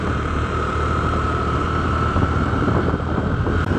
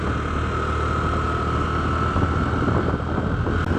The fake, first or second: first